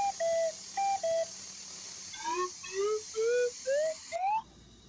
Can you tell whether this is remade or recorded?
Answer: recorded